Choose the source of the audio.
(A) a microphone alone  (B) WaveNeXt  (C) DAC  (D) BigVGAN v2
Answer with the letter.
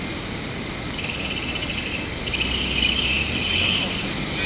A